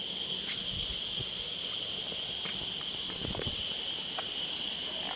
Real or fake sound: real